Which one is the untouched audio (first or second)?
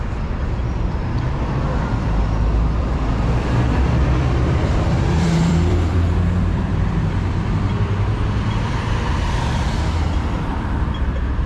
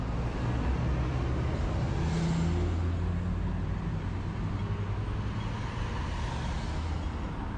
second